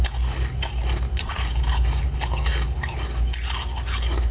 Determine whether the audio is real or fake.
real